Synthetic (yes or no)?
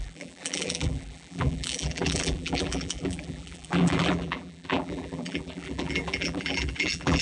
yes